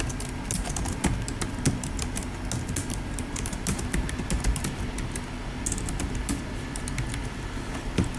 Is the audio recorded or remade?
recorded